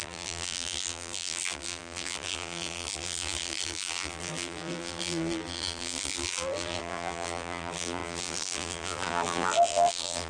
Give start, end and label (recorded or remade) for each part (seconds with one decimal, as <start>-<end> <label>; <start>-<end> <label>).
0.0-10.3 remade